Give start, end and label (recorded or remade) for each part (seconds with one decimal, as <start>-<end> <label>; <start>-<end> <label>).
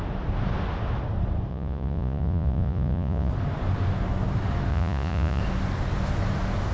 0.0-1.5 recorded; 1.5-3.3 remade; 3.3-4.7 recorded; 4.7-5.4 remade; 5.4-6.7 recorded